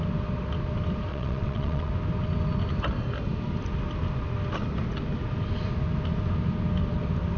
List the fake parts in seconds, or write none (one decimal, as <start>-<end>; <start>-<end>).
1.1-1.9